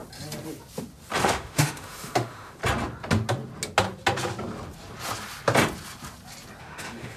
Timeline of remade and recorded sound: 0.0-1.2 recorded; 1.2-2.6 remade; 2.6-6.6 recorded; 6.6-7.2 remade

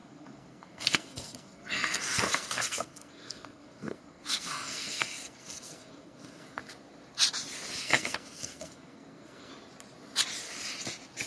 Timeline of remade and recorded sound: 0.0-6.6 remade; 6.6-7.8 recorded; 7.8-9.5 remade; 9.5-11.3 recorded

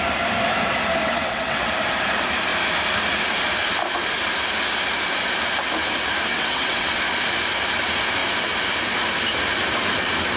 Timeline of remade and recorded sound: 0.0-1.0 recorded; 1.0-1.7 remade; 1.7-6.3 recorded; 6.3-7.0 remade; 7.0-10.4 recorded

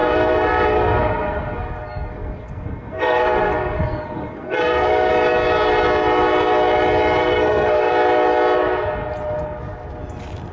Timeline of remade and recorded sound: 0.0-5.1 remade; 5.1-7.2 recorded; 7.2-7.9 remade; 7.9-10.5 recorded

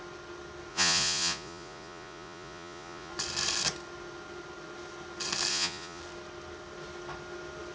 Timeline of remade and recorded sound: 0.0-0.7 recorded; 0.7-3.1 remade; 3.1-5.5 recorded; 5.5-6.0 remade; 6.0-7.7 recorded

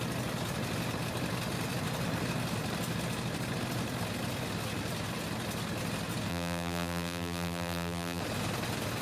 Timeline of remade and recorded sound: 0.0-6.3 recorded; 6.3-8.2 remade; 8.2-9.0 recorded

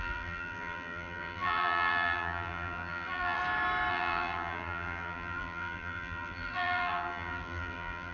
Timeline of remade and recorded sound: 0.0-3.4 remade; 3.4-3.9 recorded; 3.9-8.1 remade